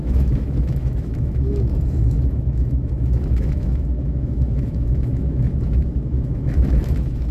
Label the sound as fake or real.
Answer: fake